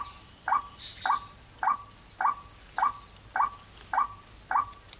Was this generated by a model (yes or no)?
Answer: no